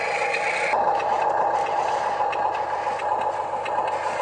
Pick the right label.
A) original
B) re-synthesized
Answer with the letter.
A